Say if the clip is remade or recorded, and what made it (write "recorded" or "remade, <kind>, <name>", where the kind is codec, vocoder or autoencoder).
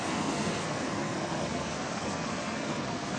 remade, codec, SNAC